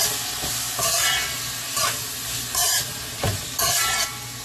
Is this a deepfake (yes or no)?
no